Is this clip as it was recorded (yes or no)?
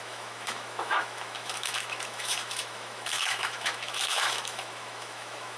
no